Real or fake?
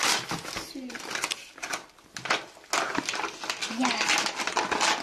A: real